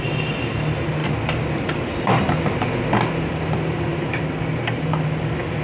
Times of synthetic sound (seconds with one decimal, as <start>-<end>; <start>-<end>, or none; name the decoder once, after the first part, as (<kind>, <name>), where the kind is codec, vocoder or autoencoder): none